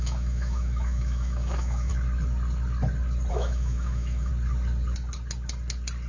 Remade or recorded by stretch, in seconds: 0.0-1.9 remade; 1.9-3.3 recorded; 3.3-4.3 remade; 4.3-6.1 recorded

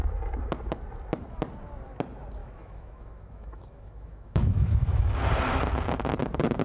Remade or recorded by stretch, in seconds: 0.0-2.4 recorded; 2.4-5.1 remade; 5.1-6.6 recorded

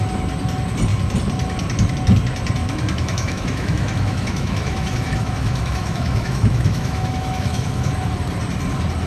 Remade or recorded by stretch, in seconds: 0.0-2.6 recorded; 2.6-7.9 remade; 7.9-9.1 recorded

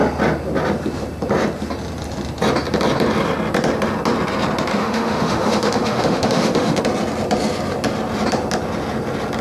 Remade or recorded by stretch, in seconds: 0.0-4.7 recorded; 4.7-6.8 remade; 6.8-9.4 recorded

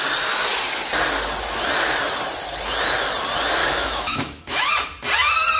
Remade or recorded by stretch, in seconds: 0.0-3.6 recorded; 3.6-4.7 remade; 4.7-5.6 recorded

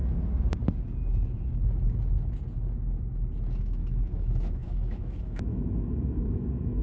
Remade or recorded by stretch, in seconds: 0.0-3.6 recorded; 3.6-6.8 remade